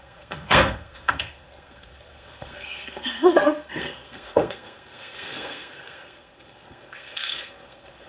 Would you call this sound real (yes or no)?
no